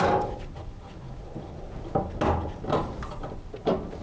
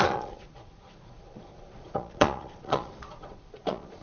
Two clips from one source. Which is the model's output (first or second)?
second